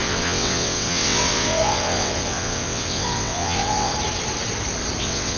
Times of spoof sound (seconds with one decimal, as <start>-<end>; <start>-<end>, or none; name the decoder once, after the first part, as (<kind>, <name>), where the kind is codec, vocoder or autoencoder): 0.0-3.9 (vocoder, WaveNeXt); 5.0-5.4